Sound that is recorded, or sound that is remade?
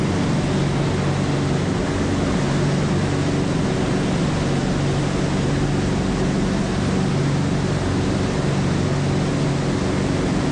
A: recorded